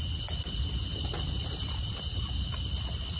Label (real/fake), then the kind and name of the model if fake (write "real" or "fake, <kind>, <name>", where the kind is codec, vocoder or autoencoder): real